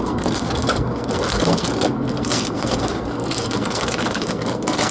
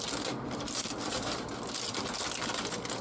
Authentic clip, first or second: second